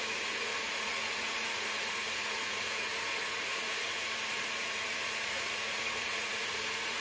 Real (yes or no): no